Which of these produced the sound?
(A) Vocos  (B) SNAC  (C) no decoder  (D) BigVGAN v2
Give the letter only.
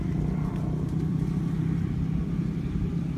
C